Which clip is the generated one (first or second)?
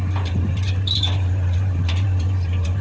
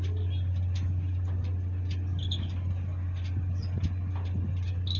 first